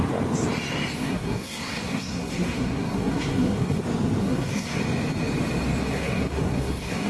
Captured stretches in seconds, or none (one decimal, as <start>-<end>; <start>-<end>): 0.0-1.0; 3.8-4.2; 4.8-5.8